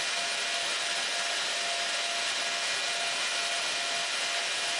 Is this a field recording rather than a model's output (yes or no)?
yes